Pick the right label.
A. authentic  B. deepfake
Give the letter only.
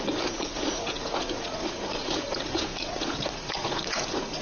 B